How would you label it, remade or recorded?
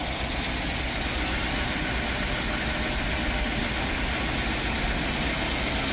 recorded